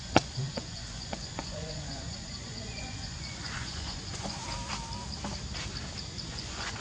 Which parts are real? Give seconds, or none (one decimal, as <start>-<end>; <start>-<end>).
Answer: 4.4-6.3